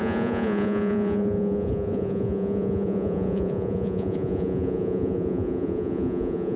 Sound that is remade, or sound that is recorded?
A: remade